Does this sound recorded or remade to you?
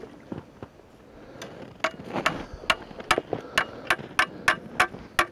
recorded